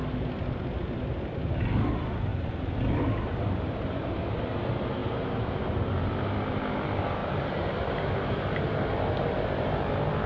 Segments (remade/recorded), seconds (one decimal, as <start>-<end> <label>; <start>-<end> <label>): 0.0-5.0 recorded; 5.0-5.8 remade; 5.8-7.2 recorded; 7.2-7.9 remade; 7.9-10.3 recorded